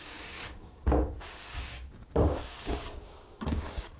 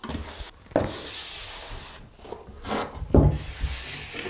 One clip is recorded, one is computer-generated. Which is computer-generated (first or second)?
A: first